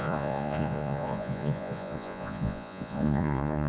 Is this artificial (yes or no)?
yes